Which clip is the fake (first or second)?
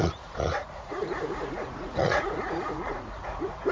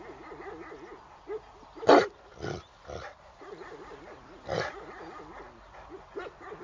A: first